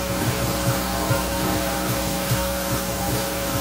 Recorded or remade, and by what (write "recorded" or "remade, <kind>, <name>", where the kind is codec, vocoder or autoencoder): remade, codec, DAC